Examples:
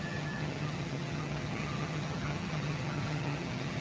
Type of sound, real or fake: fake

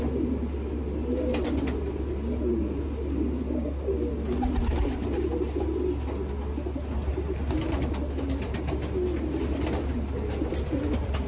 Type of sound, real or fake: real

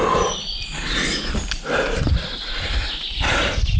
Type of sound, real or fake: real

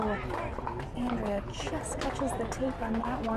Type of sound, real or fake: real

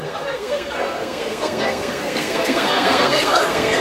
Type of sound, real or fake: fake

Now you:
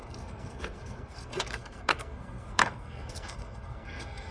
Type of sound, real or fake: fake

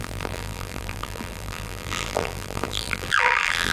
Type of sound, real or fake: fake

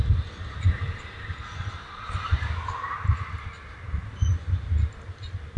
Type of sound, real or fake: real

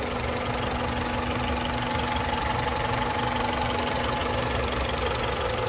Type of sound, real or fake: real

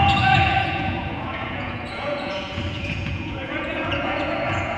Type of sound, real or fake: fake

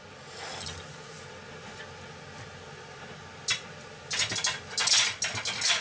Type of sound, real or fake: real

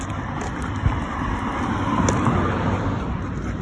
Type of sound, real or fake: real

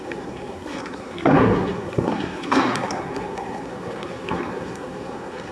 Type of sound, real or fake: fake